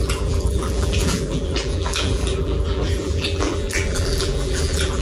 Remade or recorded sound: remade